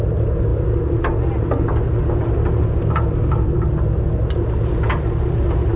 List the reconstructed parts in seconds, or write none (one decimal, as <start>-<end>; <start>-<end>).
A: none